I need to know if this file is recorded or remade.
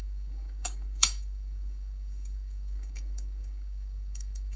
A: remade